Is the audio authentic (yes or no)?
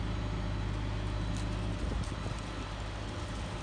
yes